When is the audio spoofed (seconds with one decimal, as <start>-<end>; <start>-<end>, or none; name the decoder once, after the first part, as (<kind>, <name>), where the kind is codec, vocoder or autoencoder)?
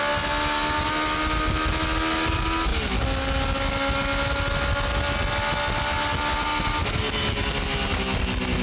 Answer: none